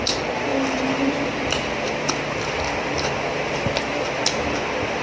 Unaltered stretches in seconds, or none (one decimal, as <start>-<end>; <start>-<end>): 0.0-5.0